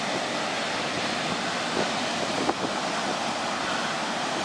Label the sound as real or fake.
real